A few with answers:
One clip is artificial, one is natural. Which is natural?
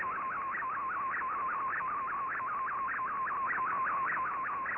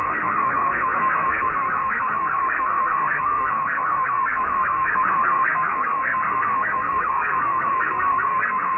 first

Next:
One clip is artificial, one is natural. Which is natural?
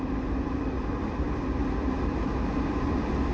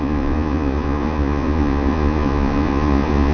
first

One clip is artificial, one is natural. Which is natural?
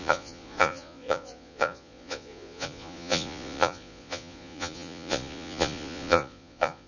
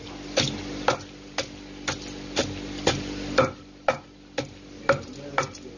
second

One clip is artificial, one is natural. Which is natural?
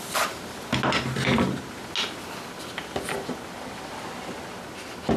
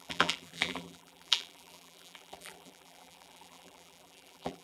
first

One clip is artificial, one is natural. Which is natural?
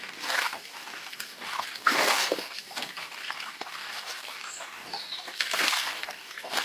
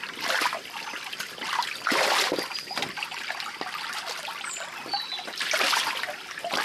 second